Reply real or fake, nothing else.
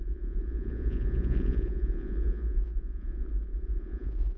fake